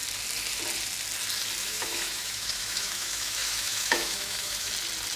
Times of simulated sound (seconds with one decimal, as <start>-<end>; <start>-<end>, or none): 1.6-4.7